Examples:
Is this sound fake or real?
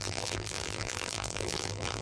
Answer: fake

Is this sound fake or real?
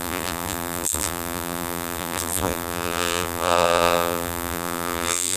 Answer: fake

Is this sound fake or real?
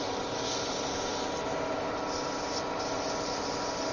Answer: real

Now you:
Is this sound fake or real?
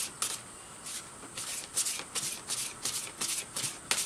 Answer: real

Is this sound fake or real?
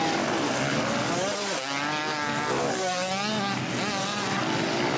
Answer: real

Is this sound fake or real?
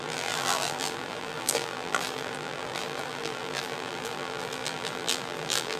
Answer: fake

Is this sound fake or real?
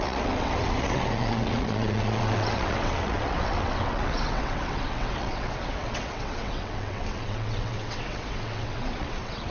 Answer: fake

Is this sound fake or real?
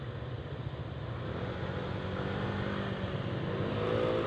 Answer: real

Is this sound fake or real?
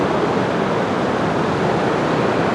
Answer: real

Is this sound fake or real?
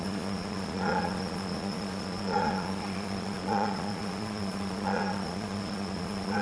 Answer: fake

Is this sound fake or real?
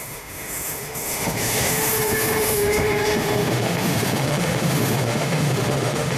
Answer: fake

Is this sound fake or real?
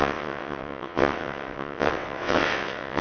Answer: fake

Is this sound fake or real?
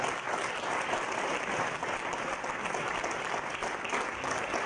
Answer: real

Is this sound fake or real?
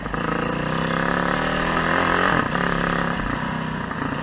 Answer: real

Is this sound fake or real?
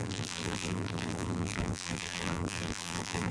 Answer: fake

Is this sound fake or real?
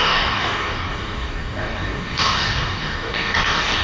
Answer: fake